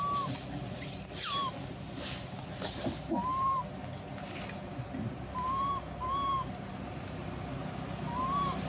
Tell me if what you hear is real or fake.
real